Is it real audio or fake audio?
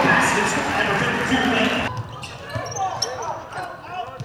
fake